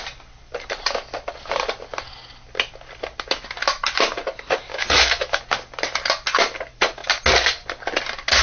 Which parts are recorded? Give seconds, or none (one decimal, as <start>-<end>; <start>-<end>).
0.0-4.7; 5.4-8.4

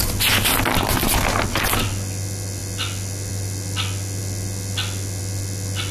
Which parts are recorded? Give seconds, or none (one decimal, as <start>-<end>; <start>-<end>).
0.0-5.9

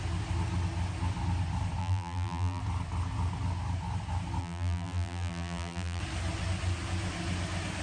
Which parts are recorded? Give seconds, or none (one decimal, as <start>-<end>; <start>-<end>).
0.0-1.8; 2.6-4.4; 6.0-7.8

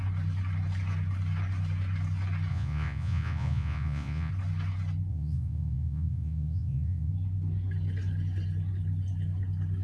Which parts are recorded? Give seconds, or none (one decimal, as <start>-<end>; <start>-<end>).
0.0-2.5; 4.3-5.1; 7.1-9.8

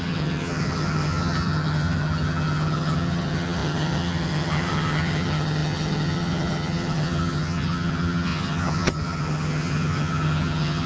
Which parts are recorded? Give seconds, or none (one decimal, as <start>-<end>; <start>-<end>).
none

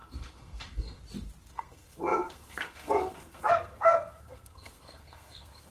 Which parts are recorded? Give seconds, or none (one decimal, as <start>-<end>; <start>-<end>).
1.0-1.5

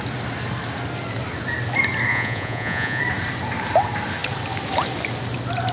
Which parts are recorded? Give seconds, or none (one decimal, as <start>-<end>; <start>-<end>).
0.0-2.1; 3.0-5.7